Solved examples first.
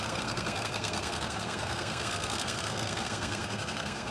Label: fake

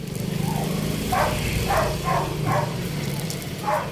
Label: real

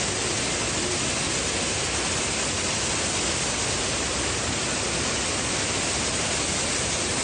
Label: real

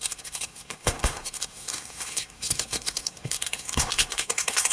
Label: fake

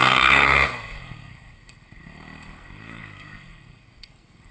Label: fake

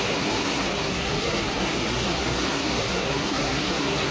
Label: fake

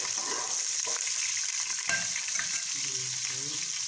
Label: real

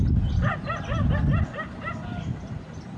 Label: real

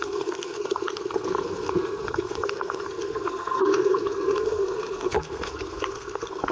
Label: fake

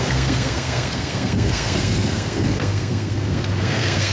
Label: fake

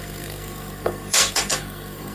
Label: fake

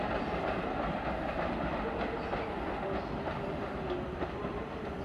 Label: real